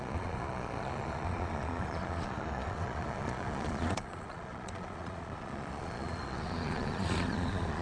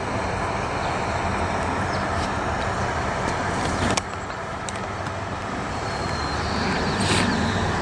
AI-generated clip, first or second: first